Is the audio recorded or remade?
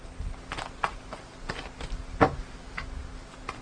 recorded